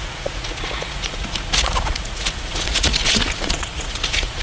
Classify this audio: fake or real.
fake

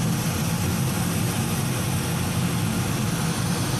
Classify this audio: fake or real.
real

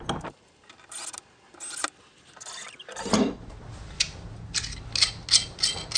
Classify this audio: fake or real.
real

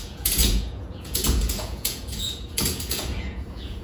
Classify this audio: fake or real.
fake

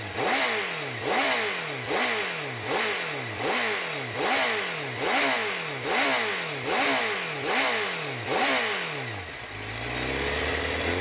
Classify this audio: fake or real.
real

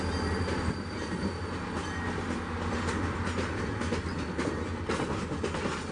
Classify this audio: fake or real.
real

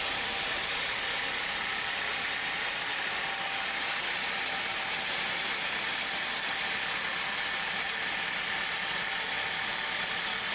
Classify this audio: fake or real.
real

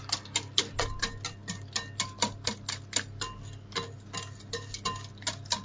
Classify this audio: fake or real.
real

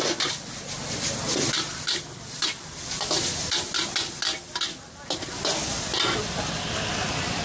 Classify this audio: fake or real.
real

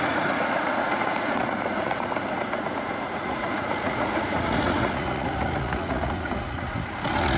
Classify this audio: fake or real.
fake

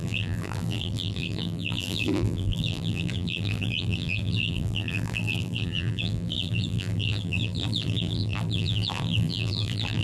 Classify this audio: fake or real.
fake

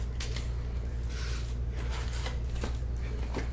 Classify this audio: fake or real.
real